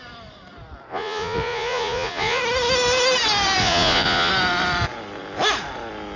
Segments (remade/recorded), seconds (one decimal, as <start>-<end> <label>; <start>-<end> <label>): 0.0-0.9 recorded; 0.9-2.4 remade; 2.4-3.6 recorded; 3.6-4.3 remade; 4.3-6.2 recorded